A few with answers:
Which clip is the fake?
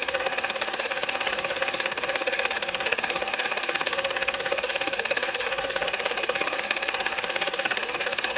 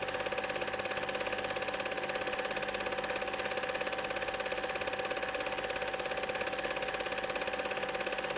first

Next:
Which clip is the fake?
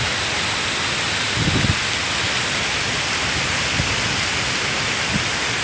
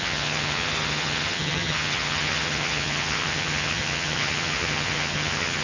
second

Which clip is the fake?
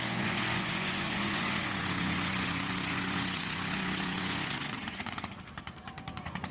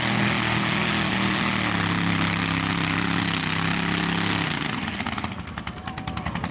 first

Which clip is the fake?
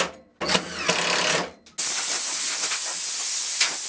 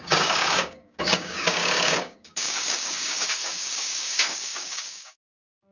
second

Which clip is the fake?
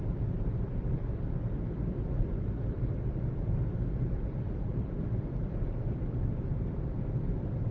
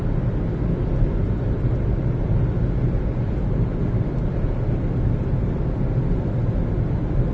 first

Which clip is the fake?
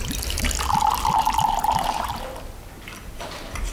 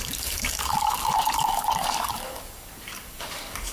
second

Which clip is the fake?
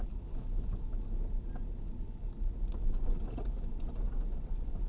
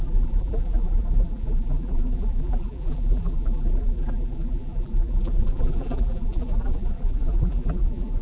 second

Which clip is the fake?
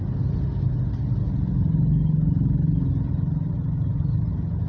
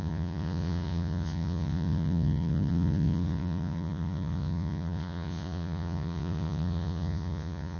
second